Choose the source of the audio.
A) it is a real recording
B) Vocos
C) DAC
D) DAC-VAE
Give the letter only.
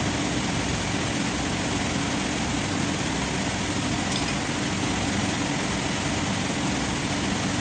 A